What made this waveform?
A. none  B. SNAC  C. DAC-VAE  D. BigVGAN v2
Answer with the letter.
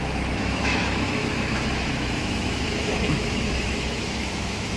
C